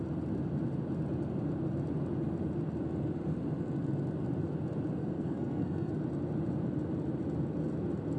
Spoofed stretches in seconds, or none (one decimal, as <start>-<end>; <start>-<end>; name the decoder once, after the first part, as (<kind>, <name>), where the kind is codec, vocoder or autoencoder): 5.0-5.9 (codec, SNAC)